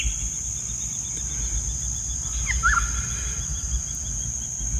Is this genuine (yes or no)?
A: yes